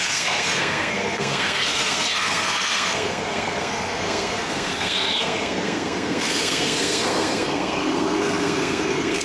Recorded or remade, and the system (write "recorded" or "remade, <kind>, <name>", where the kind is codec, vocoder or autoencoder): remade, codec, SNAC